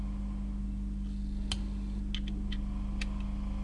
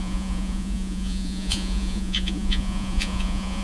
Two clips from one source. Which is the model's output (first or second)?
second